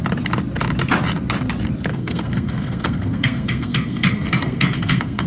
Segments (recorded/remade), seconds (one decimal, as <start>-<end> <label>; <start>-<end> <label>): 0.0-1.9 recorded; 1.9-5.3 remade